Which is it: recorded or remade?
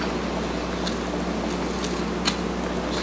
recorded